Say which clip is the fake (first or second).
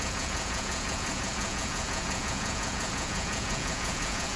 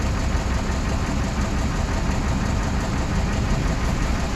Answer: first